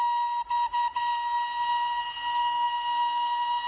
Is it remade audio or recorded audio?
recorded